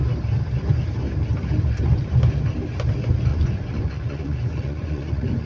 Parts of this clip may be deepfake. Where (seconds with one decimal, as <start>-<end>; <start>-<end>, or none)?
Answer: 3.3-5.5